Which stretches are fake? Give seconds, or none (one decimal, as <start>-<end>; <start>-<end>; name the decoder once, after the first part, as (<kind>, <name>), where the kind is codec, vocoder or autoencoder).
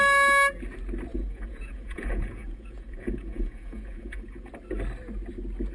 1.1-4.5 (vocoder, Vocos)